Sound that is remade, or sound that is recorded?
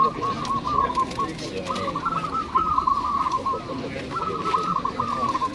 recorded